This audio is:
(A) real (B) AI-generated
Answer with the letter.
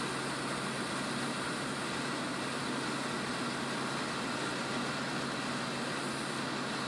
A